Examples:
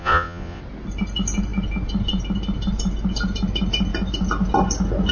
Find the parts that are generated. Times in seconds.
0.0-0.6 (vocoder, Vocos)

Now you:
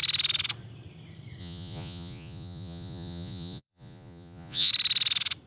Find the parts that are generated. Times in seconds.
1.4-4.7 (vocoder, Vocos)